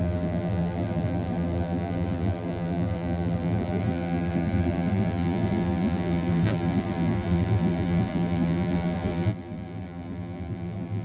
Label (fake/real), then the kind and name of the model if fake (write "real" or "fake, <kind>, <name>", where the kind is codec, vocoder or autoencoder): fake, vocoder, BigVGAN v2